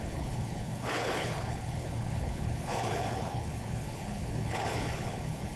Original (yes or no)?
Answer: no